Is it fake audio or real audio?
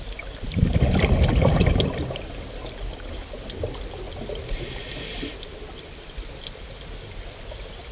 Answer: real